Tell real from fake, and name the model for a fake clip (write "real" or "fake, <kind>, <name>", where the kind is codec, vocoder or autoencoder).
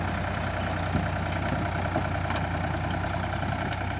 real